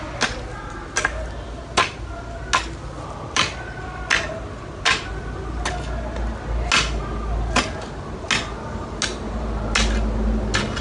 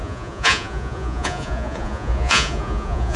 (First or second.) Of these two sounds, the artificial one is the second